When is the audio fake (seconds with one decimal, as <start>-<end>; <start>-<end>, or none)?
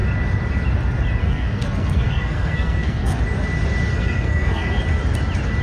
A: 1.2-3.2; 3.9-4.8